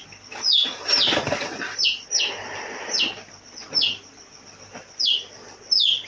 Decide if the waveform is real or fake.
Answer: real